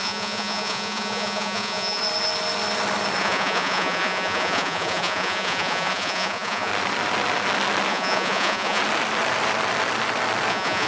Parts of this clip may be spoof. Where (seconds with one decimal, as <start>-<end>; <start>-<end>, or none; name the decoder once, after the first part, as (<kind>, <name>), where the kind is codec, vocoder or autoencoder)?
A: 0.0-2.0 (vocoder, Vocos); 3.2-6.7; 7.9-8.8; 10.5-10.9